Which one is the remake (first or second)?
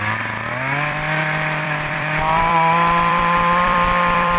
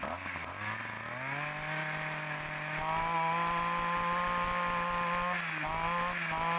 first